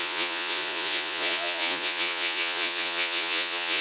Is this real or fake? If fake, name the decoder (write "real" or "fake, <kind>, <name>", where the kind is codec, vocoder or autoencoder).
fake, vocoder, Vocos